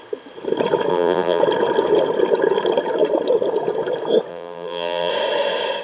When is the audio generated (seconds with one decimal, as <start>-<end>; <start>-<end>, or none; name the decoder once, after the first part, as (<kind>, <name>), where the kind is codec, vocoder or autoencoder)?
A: 0.9-1.4 (vocoder, BigVGAN v2); 4.3-5.1